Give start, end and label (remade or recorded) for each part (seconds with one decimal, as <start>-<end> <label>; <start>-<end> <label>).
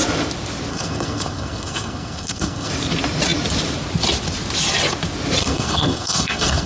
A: 0.0-0.7 recorded; 0.7-2.7 remade; 2.7-5.4 recorded; 5.4-6.7 remade